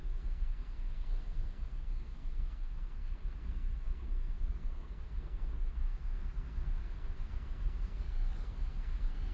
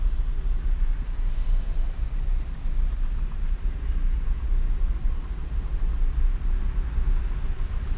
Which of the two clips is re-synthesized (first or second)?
first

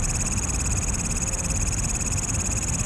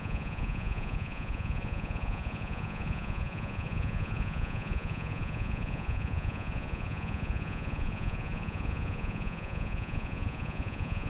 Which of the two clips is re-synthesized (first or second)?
second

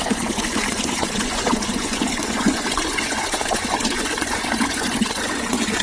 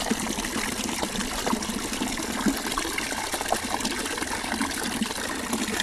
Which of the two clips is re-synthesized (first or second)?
first